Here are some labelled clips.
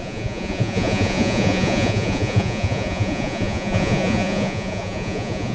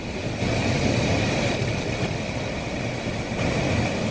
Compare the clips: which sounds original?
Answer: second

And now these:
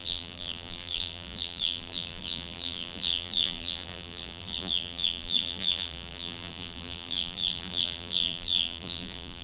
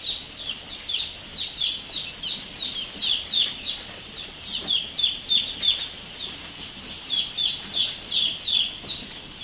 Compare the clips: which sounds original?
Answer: second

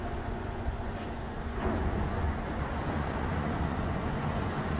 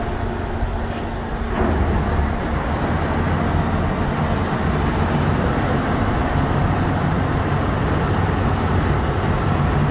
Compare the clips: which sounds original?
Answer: second